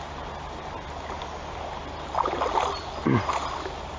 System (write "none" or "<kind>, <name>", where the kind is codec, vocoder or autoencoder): none